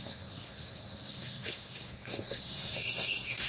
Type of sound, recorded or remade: remade